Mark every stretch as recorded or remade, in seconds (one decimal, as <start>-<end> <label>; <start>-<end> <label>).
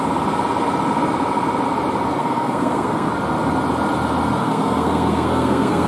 0.0-2.2 recorded; 2.2-3.1 remade; 3.1-4.4 recorded; 4.4-5.9 remade